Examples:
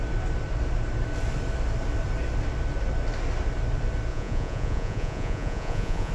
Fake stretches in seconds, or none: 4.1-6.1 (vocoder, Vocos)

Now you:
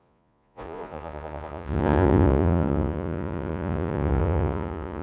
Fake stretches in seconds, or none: 0.0-5.0 (vocoder, Vocos)

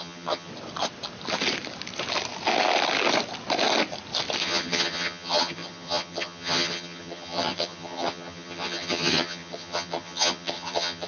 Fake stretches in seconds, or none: 0.0-0.5 (vocoder, HiFi-GAN); 4.4-11.1

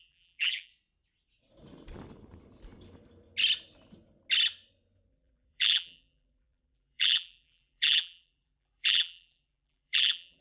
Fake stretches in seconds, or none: 0.0-0.7 (vocoder, BigVGAN v2); 5.1-10.4

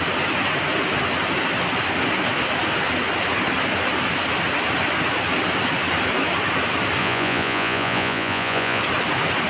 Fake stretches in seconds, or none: 7.0-8.8 (vocoder, Vocos)

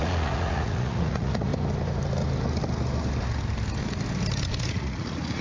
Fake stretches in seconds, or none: 0.0-1.5 (vocoder, Vocos); 4.6-5.4

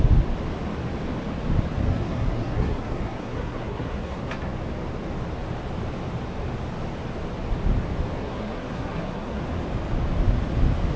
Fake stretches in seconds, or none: 1.9-4.2 (codec, SNAC); 8.2-9.4

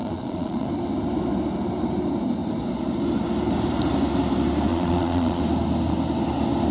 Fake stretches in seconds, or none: 0.0-0.7 (vocoder, Vocos); 4.7-5.4